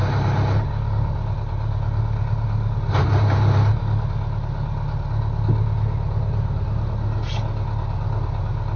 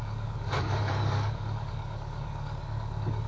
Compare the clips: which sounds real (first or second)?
first